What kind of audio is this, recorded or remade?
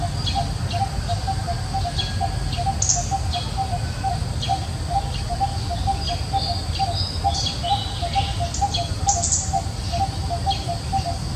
recorded